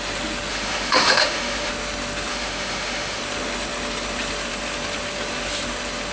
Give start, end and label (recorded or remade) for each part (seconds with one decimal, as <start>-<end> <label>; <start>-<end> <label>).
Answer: 0.0-0.5 recorded; 0.5-1.7 remade; 1.7-2.3 recorded; 2.3-3.2 remade; 3.2-6.1 recorded